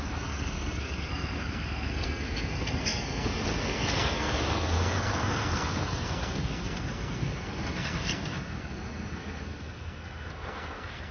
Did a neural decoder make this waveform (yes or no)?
yes